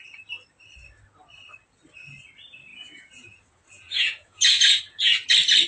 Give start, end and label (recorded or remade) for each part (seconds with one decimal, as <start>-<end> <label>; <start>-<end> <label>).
0.0-2.7 recorded; 2.7-5.3 remade; 5.3-5.7 recorded